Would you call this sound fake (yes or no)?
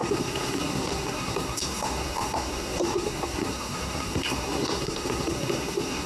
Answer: yes